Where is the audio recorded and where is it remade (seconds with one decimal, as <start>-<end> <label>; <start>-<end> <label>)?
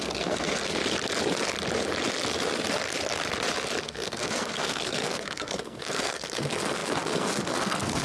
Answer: 0.0-0.8 remade; 0.8-3.8 recorded; 3.8-8.0 remade